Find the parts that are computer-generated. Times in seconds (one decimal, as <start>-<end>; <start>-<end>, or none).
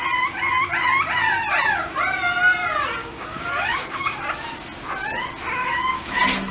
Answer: 3.0-4.2; 5.6-6.1